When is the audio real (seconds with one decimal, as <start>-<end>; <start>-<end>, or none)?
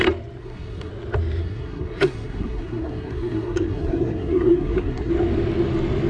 0.0-0.4; 0.9-1.4; 5.1-6.1